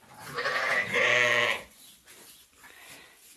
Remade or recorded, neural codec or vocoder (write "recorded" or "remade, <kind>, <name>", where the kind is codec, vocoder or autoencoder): remade, vocoder, Vocos